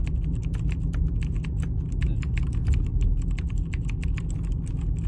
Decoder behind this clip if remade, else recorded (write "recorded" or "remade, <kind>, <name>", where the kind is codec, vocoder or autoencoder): recorded